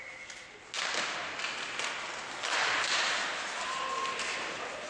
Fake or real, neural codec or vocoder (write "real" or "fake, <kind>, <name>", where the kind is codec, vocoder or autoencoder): real